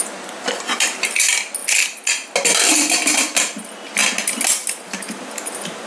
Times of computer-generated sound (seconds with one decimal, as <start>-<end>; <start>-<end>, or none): none